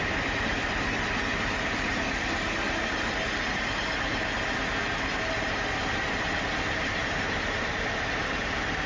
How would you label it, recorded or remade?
recorded